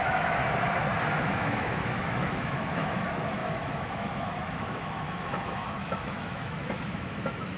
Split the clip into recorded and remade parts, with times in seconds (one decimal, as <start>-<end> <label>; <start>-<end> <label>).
0.0-0.4 remade; 0.4-1.2 recorded; 1.2-7.6 remade